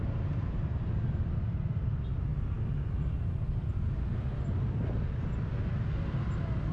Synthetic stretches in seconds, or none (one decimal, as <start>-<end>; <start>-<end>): none